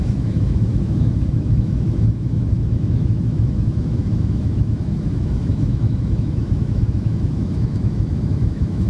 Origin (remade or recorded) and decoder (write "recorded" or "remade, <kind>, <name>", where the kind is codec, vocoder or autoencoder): remade, autoencoder, DAC-VAE